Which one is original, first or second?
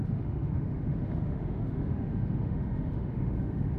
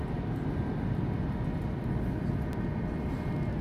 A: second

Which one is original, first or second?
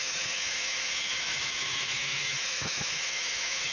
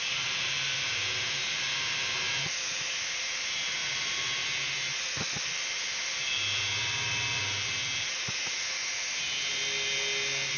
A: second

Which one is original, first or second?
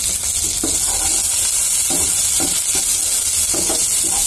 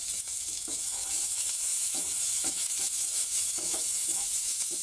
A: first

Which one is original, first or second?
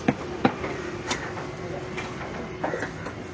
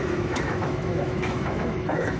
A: first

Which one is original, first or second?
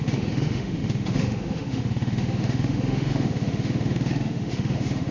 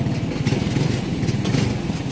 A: second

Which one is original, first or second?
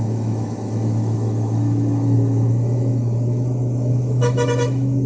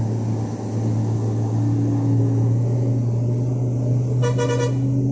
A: second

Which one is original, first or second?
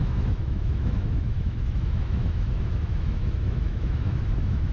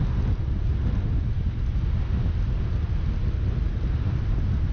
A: second